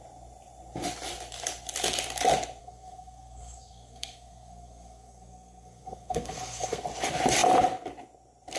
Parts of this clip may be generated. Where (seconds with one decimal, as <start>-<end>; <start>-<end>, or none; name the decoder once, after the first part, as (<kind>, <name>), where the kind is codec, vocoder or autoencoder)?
2.6-6.8 (codec, SNAC)